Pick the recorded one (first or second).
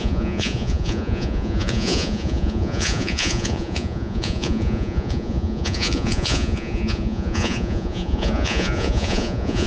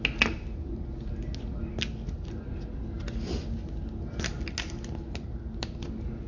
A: second